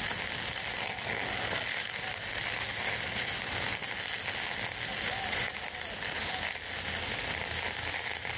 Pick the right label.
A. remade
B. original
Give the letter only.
B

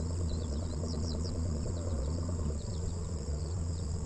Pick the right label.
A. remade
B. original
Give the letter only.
A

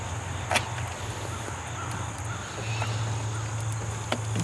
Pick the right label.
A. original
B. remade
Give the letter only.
A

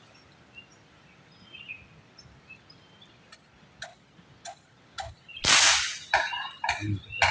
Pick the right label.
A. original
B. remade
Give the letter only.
A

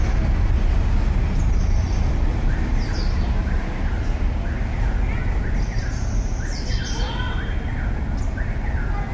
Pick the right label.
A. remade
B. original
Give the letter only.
B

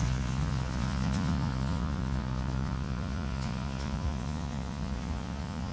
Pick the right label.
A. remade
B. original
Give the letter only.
A